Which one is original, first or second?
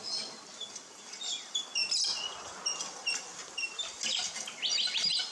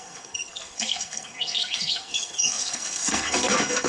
first